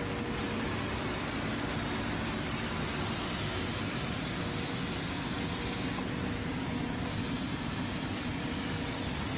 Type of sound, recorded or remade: recorded